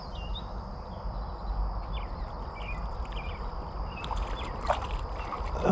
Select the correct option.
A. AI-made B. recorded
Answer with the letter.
B